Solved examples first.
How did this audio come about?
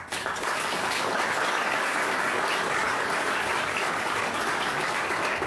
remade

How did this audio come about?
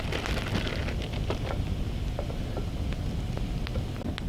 recorded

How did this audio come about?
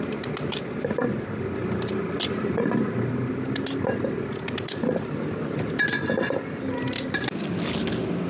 recorded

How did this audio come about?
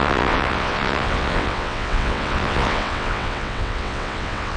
remade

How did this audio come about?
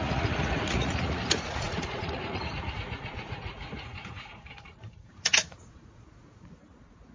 remade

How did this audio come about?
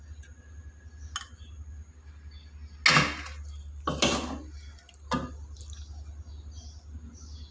recorded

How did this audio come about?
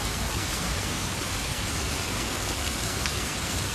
remade